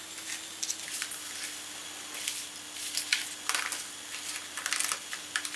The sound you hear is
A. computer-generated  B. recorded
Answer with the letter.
B